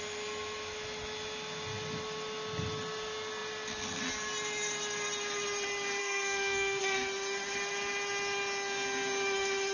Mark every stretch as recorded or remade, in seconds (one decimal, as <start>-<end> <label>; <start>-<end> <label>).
0.0-6.0 recorded; 6.0-6.8 remade; 6.8-9.7 recorded